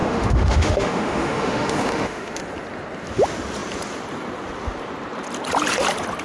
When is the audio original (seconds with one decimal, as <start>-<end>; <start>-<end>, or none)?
2.4-6.2